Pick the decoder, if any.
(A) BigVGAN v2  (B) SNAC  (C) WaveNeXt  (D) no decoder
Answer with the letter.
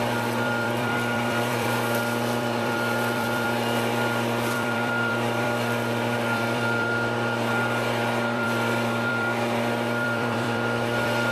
A